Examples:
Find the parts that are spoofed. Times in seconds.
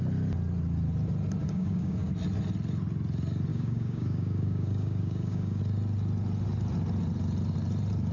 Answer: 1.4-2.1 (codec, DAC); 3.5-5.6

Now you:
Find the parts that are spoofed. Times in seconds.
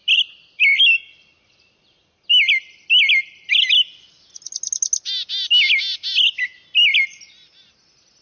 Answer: none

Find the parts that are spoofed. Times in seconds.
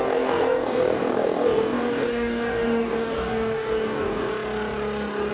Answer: 0.0-4.3 (codec, DAC)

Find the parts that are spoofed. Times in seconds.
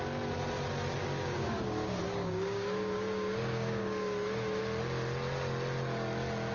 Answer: 1.0-4.6 (codec, DAC)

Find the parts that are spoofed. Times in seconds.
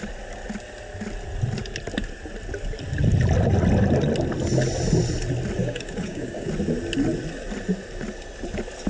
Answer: 5.6-6.5 (codec, DAC)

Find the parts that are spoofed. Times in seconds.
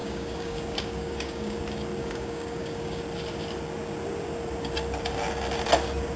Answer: 0.0-1.6 (codec, DAC); 2.0-3.0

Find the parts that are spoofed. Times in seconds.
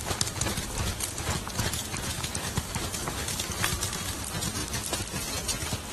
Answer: 2.1-3.6 (codec, DAC)